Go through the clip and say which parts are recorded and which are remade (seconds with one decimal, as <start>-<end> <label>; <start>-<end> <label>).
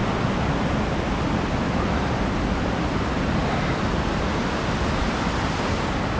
0.0-6.2 recorded